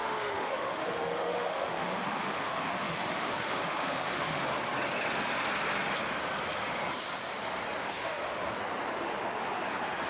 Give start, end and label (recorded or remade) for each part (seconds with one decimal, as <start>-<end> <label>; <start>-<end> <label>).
0.0-4.4 remade; 4.4-7.8 recorded; 7.8-8.5 remade; 8.5-10.1 recorded